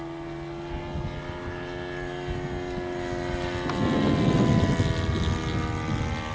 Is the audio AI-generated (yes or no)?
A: no